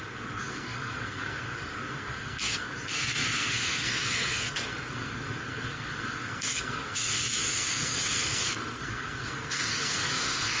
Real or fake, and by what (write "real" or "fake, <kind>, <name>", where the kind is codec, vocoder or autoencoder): fake, codec, SNAC